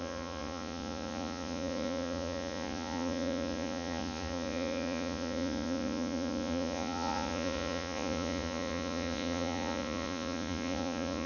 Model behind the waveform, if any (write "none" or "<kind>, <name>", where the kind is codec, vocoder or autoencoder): vocoder, Vocos